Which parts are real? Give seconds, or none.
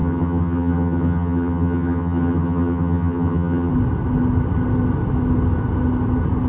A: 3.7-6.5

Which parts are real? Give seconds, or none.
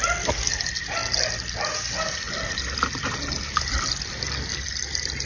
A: 0.0-5.3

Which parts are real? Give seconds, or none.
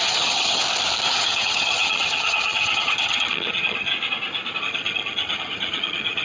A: 0.6-1.1; 3.9-4.6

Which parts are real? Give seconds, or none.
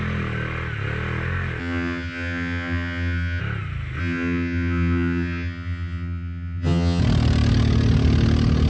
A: 0.0-1.6; 3.4-4.0; 7.0-8.7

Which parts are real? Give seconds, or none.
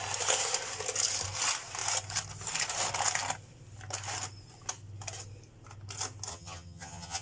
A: 0.0-6.3